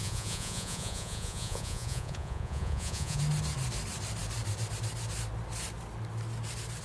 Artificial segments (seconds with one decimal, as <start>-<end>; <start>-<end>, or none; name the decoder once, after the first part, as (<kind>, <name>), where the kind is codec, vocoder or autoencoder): 0.0-3.2 (vocoder, Vocos)